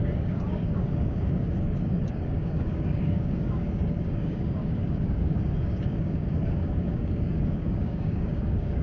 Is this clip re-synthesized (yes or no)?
yes